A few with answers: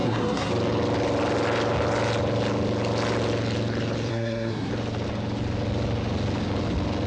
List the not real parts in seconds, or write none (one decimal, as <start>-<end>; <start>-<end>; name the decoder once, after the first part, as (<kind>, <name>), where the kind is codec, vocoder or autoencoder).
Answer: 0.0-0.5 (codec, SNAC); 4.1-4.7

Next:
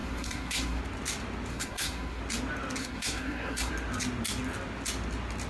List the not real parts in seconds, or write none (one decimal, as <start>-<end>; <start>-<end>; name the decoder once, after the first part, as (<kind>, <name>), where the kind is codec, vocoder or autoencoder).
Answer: 0.0-0.8 (codec, SNAC); 1.5-2.2; 2.8-3.7

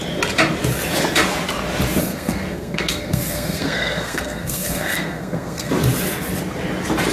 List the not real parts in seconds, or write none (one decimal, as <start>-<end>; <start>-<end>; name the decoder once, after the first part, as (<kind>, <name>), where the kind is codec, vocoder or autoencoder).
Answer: 2.0-5.7 (codec, SNAC)

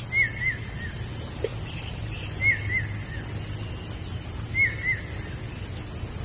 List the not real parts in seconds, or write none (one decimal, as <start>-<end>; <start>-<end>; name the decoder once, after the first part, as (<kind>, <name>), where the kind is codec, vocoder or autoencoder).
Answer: none

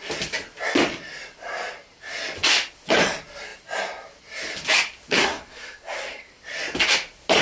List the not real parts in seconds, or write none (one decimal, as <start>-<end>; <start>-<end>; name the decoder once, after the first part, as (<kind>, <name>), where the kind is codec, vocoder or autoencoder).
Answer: 5.1-6.3 (codec, SNAC)